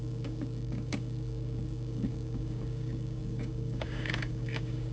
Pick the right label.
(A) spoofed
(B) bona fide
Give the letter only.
A